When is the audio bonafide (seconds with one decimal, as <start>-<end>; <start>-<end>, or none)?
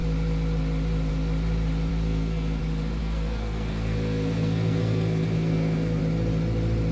0.0-1.9; 2.6-3.0; 6.0-6.9